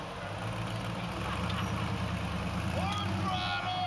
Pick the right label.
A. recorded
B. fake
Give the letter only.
A